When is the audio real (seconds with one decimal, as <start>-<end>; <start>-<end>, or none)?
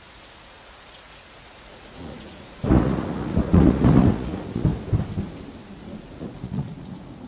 4.7-5.8